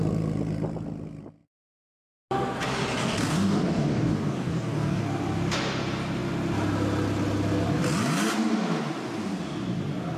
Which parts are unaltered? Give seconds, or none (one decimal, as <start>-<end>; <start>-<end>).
0.0-3.0; 5.0-10.2